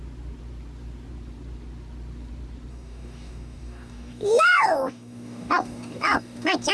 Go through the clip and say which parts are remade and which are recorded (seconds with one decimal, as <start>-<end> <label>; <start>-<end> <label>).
0.0-2.7 recorded; 2.7-6.7 remade